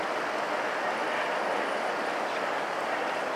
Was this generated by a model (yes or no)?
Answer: no